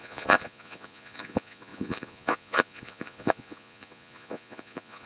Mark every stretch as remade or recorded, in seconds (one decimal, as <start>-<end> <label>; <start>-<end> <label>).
0.0-5.1 remade